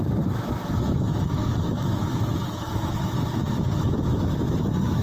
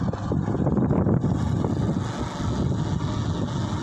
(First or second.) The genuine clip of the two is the second